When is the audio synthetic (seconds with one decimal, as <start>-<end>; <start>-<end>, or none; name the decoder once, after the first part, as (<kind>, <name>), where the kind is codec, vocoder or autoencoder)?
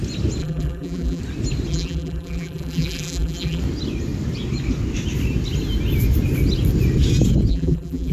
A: 0.4-1.2 (vocoder, BigVGAN v2); 1.7-3.6; 7.5-8.1